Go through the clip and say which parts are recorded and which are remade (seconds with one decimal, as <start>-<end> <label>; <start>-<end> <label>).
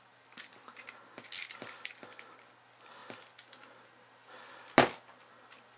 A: 0.0-5.8 recorded